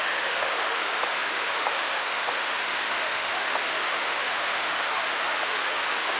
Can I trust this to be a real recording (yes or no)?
no